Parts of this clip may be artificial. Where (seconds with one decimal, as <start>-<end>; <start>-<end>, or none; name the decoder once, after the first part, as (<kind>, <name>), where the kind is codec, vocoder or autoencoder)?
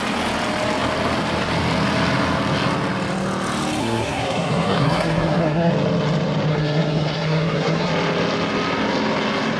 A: 3.8-5.7 (codec, SNAC); 6.5-7.9